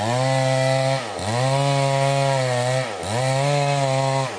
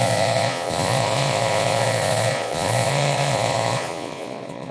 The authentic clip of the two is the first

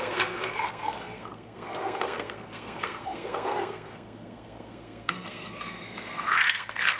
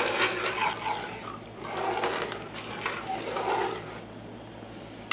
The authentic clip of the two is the second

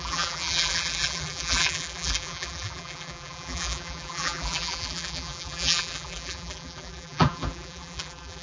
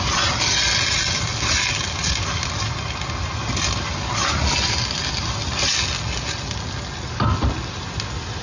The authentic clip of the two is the second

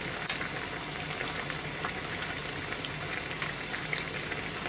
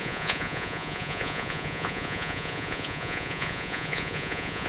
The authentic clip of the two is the first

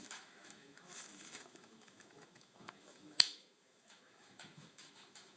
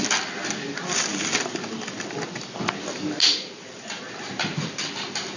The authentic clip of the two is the second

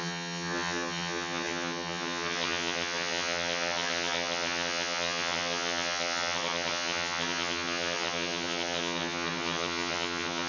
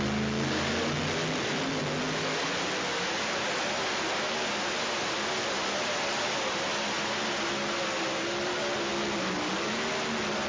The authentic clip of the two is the second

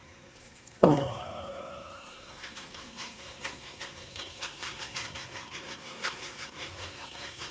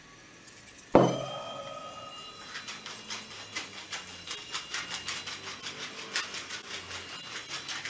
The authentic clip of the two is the second